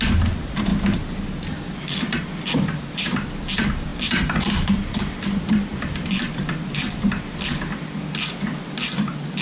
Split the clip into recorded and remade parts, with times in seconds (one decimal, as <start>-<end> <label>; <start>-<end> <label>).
0.0-0.7 remade; 0.7-1.8 recorded; 1.8-9.4 remade